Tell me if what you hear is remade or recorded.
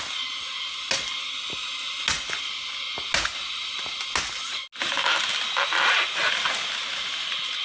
recorded